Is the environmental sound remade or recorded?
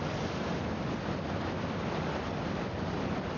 recorded